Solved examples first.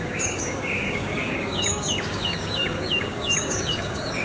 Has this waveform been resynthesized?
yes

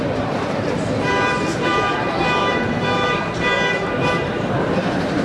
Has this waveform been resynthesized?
yes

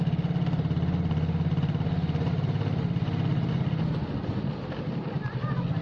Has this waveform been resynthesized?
no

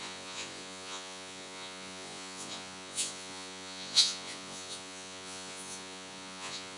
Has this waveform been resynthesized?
yes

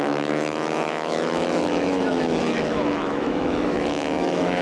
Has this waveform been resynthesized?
yes